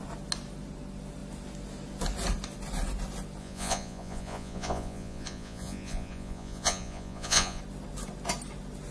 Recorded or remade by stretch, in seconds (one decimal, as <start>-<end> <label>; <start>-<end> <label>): 0.0-3.4 recorded; 3.4-7.6 remade; 7.6-8.9 recorded

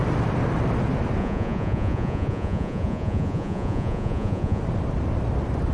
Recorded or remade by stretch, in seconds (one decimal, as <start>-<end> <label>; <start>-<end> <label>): 0.0-1.2 recorded; 1.2-4.6 remade; 4.6-5.7 recorded

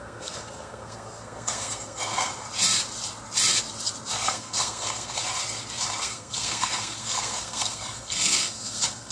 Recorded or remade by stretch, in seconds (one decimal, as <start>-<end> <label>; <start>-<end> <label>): 0.0-2.3 remade; 2.3-4.1 recorded; 4.1-5.2 remade; 5.2-6.0 recorded; 6.0-9.1 remade